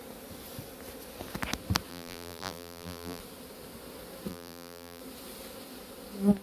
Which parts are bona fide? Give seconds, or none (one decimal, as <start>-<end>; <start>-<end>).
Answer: 0.0-1.9; 3.2-4.3; 5.0-6.4